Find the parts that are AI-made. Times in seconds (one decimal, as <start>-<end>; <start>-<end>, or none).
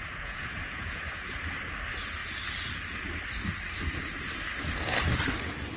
0.0-1.3